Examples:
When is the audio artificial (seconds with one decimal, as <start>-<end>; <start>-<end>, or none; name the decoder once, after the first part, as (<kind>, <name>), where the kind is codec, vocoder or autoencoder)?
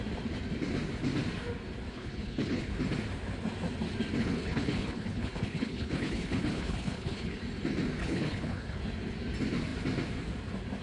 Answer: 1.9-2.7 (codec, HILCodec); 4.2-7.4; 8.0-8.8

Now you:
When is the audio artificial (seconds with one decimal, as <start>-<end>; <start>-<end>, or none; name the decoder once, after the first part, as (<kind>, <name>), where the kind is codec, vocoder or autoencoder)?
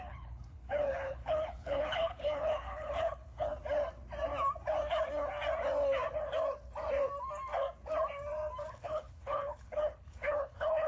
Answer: 0.0-3.5 (codec, HILCodec); 8.7-10.9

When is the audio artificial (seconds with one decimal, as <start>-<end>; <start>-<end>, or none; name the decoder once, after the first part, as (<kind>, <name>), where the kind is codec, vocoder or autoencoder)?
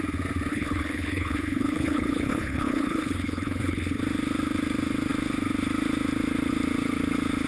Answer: 0.5-4.0 (codec, HILCodec)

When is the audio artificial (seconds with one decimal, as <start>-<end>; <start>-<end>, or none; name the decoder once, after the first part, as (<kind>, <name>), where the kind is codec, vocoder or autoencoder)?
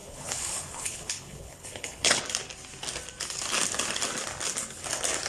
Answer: 0.0-2.2 (codec, HILCodec)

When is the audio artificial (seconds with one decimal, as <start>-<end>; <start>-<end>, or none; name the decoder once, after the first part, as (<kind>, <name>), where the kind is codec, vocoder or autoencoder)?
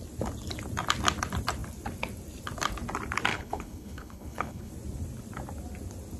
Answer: 3.3-4.7 (codec, HILCodec)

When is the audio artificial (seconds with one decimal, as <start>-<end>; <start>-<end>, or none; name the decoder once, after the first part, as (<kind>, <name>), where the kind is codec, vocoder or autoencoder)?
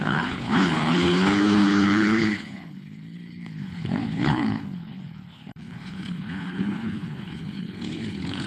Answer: 0.0-8.5 (codec, HILCodec)